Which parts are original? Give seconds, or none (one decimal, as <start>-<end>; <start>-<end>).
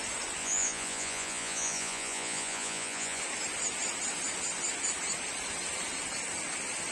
0.0-0.4; 3.2-6.9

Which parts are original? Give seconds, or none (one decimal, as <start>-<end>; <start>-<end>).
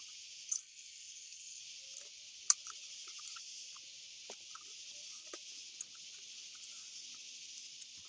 0.0-0.6; 1.6-8.1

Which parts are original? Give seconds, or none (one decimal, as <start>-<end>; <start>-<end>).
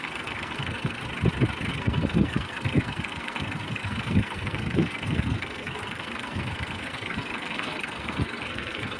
1.0-1.7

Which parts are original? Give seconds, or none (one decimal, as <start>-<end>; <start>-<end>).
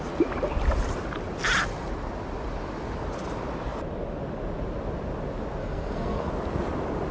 0.0-5.6; 6.3-7.1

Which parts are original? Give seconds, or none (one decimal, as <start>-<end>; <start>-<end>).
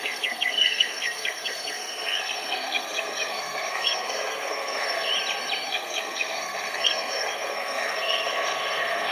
5.1-5.7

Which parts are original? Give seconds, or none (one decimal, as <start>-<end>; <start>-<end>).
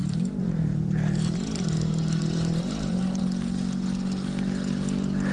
3.2-5.3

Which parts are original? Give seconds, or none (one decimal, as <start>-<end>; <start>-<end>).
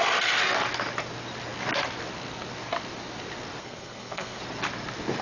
0.0-3.6; 4.4-5.2